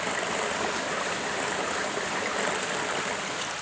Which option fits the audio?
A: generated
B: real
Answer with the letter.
B